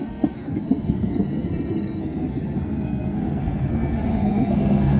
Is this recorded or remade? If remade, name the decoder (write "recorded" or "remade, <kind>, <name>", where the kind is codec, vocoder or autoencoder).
remade, codec, SNAC